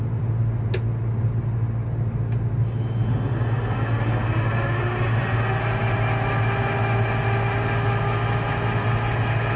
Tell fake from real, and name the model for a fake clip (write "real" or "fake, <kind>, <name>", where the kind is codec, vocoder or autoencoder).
real